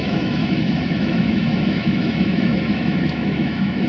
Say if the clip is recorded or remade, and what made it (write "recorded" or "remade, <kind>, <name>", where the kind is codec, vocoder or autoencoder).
remade, autoencoder, DAC-VAE